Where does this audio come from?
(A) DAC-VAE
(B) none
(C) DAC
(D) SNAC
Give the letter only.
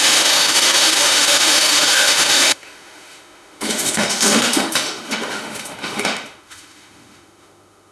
A